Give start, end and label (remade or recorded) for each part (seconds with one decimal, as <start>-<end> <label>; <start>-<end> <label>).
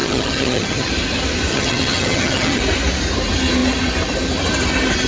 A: 0.0-0.9 remade; 0.9-1.5 recorded; 1.5-2.6 remade; 2.6-5.1 recorded